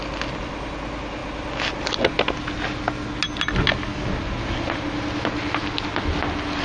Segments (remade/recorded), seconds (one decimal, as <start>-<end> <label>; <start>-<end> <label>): 0.0-6.6 recorded